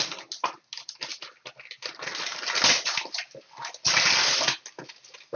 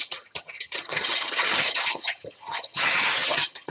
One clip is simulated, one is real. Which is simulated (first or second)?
second